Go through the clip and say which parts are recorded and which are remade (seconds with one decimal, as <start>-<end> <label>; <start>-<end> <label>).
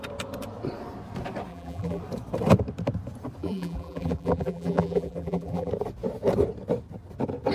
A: 0.0-1.5 recorded; 1.5-2.0 remade; 2.0-3.4 recorded; 3.4-5.7 remade; 5.7-7.5 recorded